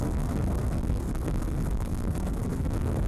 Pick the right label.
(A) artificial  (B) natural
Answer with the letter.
A